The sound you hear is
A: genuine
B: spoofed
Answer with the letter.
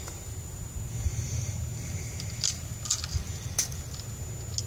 A